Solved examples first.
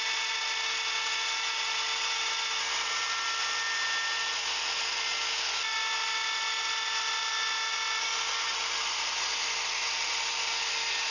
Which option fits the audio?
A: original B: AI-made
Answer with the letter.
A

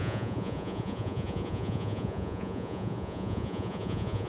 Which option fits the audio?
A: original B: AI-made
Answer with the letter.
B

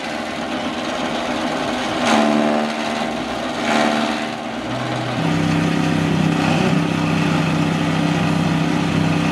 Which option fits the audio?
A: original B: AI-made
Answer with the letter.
A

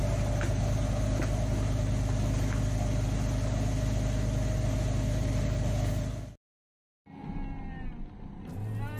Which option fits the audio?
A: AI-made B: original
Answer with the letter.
B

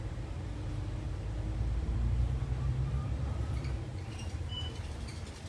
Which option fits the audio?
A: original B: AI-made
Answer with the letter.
B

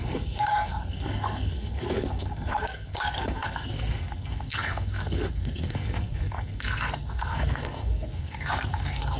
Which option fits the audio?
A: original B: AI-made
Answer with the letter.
B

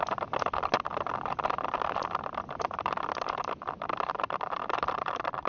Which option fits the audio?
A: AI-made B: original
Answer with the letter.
B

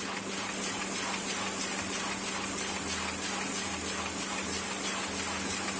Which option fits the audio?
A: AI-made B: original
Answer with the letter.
B